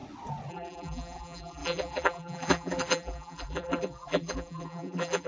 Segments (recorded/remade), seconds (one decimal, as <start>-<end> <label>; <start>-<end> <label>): 0.0-0.5 recorded; 0.5-5.3 remade